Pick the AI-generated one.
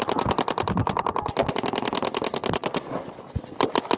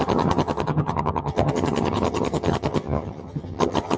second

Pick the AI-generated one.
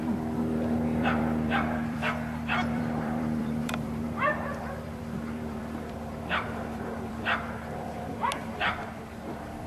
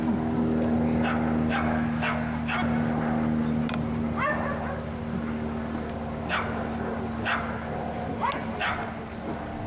first